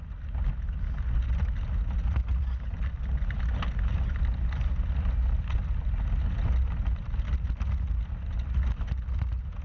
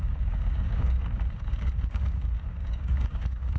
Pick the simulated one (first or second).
second